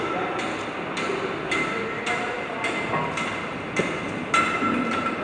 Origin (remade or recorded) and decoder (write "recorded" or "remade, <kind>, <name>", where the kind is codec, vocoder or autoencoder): recorded